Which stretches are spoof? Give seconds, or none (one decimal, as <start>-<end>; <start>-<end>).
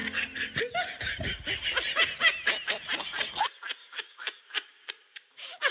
3.8-5.7